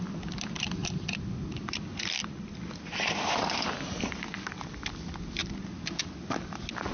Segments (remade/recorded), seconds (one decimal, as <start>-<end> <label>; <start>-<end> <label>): 0.0-6.9 recorded